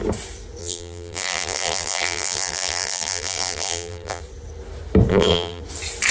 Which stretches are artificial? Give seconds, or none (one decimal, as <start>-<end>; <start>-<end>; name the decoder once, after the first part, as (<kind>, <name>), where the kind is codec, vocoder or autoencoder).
0.6-4.2 (vocoder, BigVGAN v2); 5.1-5.6